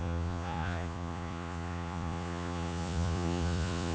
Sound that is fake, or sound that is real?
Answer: fake